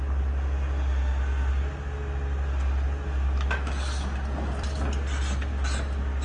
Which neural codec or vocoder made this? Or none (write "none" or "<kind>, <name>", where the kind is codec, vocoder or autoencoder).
none